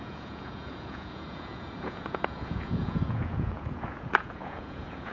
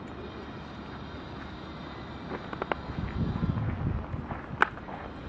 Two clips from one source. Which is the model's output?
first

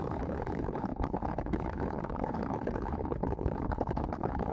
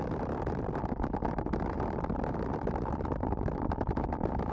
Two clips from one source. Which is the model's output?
first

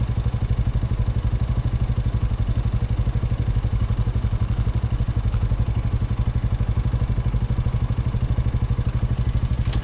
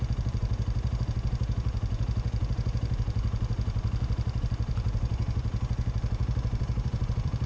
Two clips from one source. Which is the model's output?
second